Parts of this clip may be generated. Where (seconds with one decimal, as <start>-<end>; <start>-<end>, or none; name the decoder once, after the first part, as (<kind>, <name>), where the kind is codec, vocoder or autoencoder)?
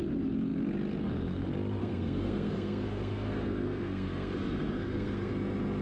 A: 1.8-5.3 (codec, SNAC)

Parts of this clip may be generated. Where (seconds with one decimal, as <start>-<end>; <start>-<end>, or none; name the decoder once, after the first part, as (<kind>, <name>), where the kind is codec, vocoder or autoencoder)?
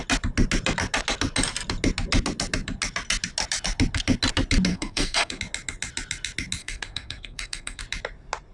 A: 4.7-5.4 (codec, SNAC); 6.6-7.8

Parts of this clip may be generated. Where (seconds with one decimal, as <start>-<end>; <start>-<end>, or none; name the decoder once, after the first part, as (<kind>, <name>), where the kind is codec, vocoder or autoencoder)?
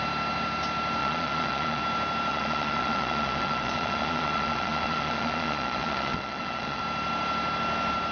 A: 1.0-1.8 (vocoder, Vocos); 2.3-6.8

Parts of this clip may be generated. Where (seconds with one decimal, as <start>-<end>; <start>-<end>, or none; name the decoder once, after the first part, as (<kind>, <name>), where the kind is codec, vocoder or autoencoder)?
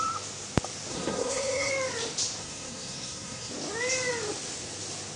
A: 0.9-1.7 (codec, SNAC); 2.4-3.5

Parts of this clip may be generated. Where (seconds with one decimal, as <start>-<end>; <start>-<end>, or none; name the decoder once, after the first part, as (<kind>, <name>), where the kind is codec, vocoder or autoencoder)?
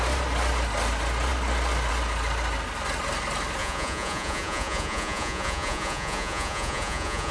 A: 3.6-7.3 (vocoder, Vocos)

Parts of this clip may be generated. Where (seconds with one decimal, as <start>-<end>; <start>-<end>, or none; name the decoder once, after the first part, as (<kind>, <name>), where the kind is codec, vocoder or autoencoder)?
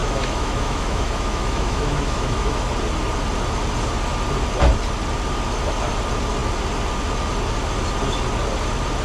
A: 0.0-2.7 (autoencoder, DAC-VAE)